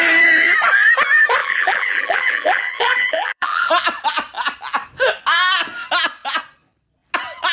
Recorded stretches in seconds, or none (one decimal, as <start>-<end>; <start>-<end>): 0.0-1.4; 3.7-7.5